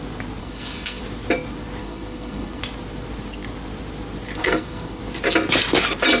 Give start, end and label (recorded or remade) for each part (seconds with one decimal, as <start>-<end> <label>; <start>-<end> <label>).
0.0-0.4 recorded; 0.4-1.0 remade; 1.0-1.8 recorded; 1.8-2.6 remade; 2.6-4.4 recorded; 4.4-5.0 remade; 5.0-6.2 recorded